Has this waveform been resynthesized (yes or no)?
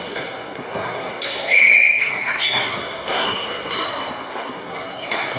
yes